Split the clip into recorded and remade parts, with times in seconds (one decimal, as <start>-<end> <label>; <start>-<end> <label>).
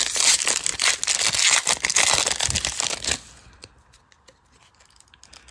0.0-5.5 recorded